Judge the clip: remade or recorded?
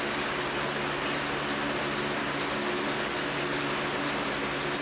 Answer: recorded